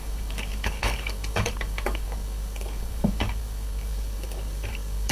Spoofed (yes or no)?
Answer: yes